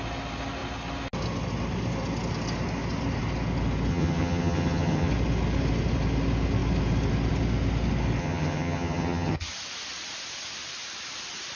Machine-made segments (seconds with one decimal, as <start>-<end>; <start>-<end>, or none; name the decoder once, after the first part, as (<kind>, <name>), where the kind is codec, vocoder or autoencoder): 3.9-5.1 (vocoder, HiFi-GAN); 8.2-9.5